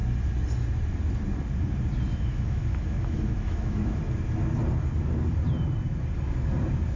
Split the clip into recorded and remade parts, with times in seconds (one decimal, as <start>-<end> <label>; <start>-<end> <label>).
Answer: 0.0-2.1 recorded; 2.1-4.0 remade; 4.0-7.0 recorded